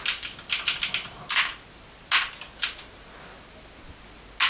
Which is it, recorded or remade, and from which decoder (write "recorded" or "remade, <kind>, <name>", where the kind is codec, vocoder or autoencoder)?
recorded